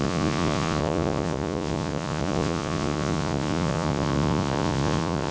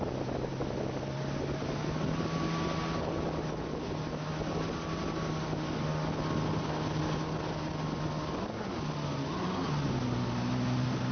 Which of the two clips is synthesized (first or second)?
first